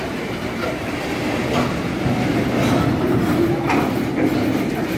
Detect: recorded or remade recorded